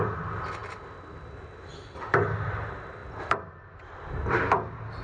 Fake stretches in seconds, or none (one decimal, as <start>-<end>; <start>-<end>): none